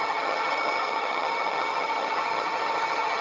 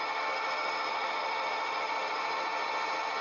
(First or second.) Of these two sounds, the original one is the second